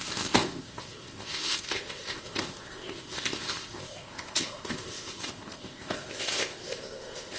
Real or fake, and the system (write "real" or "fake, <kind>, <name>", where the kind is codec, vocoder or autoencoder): fake, codec, ZipCodec